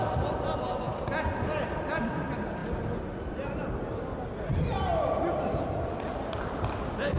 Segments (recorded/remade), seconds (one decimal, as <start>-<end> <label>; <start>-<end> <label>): 0.0-7.2 remade

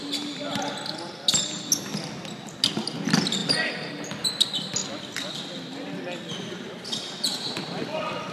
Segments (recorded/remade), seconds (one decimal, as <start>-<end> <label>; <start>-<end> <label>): 0.0-3.4 recorded; 3.4-3.9 remade; 3.9-8.3 recorded